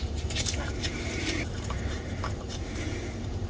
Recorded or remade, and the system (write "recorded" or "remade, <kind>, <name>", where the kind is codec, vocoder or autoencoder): remade, vocoder, BigVGAN v2